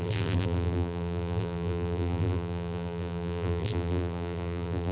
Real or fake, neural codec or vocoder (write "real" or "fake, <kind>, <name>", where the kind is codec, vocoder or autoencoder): fake, vocoder, BigVGAN v2